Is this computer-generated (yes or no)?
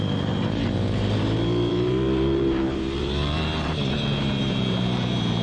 yes